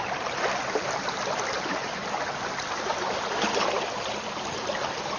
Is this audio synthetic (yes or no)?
no